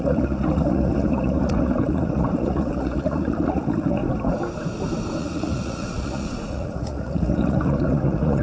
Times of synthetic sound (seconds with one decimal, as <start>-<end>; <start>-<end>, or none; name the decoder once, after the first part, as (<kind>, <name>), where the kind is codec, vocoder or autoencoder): 0.0-4.0 (vocoder, Vocos); 5.2-8.4